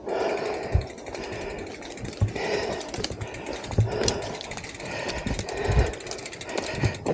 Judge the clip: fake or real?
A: real